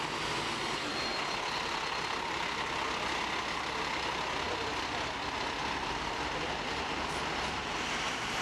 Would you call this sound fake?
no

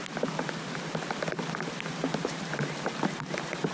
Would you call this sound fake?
no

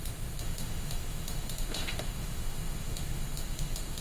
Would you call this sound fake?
yes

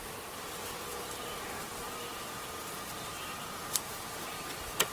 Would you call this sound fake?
no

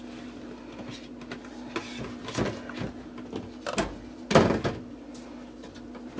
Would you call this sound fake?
no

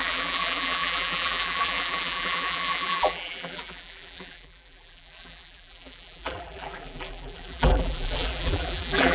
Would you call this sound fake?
yes